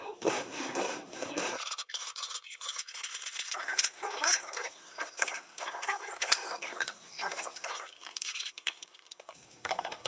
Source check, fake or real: fake